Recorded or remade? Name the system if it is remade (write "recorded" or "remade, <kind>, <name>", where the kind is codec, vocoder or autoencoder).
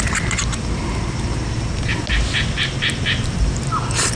recorded